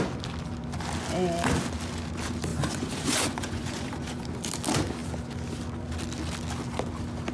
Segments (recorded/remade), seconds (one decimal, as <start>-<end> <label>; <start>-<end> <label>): 0.0-2.5 recorded; 2.5-4.2 remade; 4.2-7.3 recorded